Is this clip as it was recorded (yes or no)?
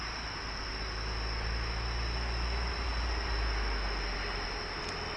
yes